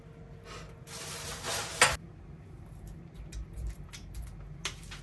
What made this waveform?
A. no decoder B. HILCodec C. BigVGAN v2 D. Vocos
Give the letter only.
A